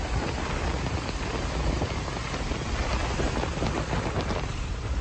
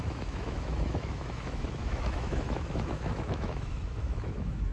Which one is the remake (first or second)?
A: second